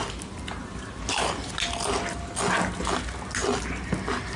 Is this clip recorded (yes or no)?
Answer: yes